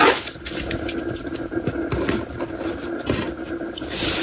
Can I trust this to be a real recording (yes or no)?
yes